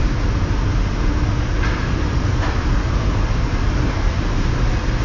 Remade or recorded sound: recorded